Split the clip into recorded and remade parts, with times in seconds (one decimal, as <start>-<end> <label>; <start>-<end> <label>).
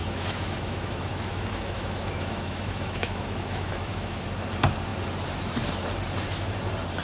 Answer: 0.0-4.2 remade; 4.2-7.0 recorded